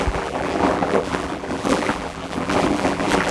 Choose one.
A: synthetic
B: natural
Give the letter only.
A